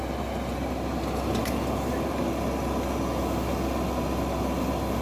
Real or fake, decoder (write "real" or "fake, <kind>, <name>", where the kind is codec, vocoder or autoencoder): real